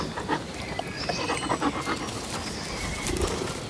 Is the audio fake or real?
real